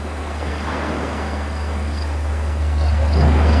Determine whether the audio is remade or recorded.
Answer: remade